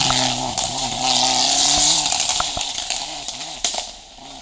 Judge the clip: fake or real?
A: fake